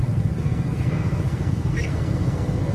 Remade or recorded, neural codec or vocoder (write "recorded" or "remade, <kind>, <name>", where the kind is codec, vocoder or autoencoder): remade, codec, SNAC